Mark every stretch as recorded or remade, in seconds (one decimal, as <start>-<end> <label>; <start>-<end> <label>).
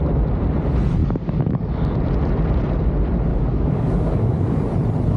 0.0-1.0 recorded; 1.0-1.9 remade; 1.9-3.3 recorded; 3.3-4.7 remade; 4.7-5.2 recorded